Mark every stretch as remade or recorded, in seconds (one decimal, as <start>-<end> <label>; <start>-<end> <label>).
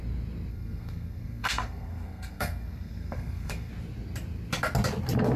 0.0-0.5 recorded; 0.5-3.7 remade; 3.7-5.4 recorded